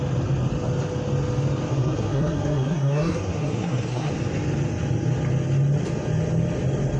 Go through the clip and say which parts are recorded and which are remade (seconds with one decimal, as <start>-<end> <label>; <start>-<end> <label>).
0.0-1.7 recorded; 1.7-4.1 remade; 4.1-7.0 recorded